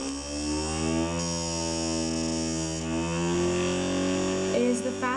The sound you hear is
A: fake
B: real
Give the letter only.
B